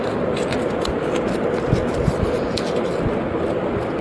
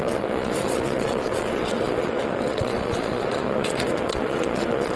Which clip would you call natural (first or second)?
first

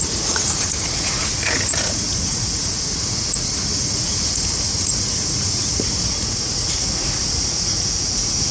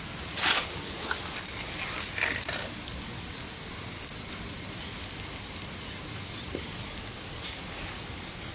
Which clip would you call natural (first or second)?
second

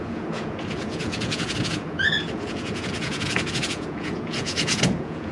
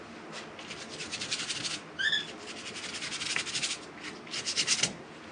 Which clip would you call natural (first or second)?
second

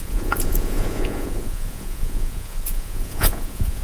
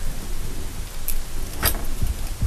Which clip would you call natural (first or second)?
second